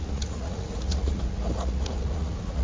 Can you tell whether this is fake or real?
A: fake